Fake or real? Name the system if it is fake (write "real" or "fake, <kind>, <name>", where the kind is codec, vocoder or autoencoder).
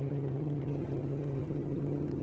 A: fake, vocoder, HiFi-GAN